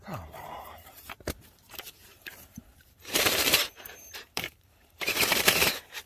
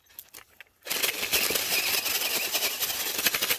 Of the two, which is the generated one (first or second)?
first